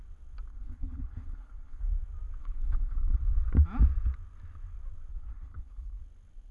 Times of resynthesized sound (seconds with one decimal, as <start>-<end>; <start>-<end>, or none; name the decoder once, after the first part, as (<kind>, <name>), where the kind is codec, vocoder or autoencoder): 0.5-1.8 (codec, HILCodec); 2.4-3.2; 5.1-6.0